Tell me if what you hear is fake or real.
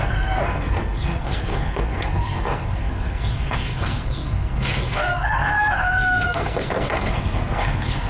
fake